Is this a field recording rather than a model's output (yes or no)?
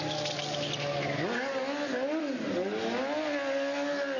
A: yes